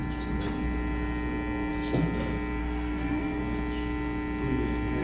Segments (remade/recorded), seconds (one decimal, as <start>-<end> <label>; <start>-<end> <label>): 0.0-2.6 recorded; 2.6-3.4 remade; 3.4-5.0 recorded